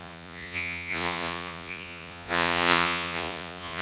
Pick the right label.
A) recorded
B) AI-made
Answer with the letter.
B